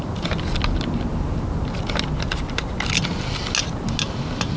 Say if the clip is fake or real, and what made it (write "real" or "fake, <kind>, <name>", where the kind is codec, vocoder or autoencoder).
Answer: real